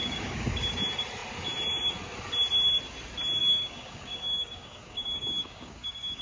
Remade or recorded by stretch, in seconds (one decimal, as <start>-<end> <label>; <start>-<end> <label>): 0.0-0.7 remade; 0.7-3.4 recorded; 3.4-6.2 remade